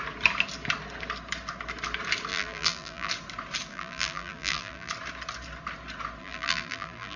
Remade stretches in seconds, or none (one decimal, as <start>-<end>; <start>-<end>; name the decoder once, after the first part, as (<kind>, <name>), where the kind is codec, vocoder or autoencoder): 2.3-3.1 (vocoder, BigVGAN v2); 3.7-4.9; 6.2-7.2